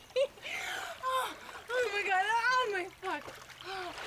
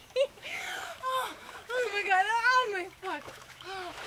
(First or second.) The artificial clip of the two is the second